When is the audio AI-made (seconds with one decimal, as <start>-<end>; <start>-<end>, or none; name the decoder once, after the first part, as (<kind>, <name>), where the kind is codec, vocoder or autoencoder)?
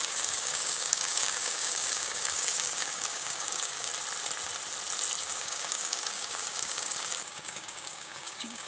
0.0-3.9 (codec, DAC); 5.2-8.7